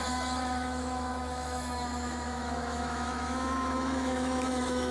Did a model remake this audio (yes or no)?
yes